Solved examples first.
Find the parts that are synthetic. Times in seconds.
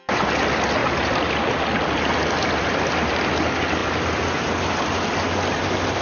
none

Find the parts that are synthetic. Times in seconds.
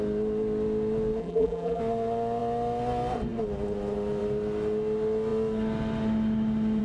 1.2-1.8 (vocoder, BigVGAN v2)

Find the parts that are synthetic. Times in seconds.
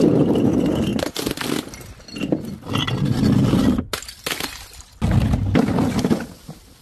none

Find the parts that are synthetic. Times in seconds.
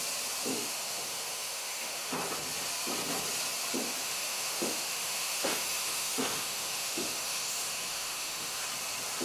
0.5-2.1 (autoencoder, DAC-VAE); 4.0-8.6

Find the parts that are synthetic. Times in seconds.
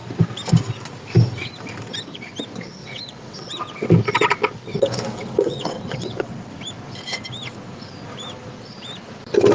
2.8-3.5 (vocoder, WaveNeXt); 4.7-6.3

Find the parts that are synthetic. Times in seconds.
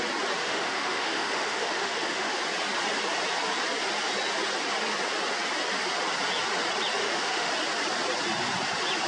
0.4-2.4 (autoencoder, DAC-VAE); 7.0-7.5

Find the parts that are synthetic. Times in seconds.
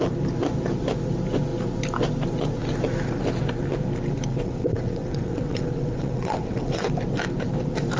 4.3-6.9 (vocoder, WaveNeXt)